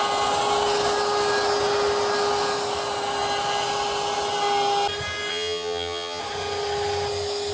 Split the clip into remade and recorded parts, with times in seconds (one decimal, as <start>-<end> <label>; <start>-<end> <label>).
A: 0.0-5.3 recorded; 5.3-6.2 remade; 6.2-7.5 recorded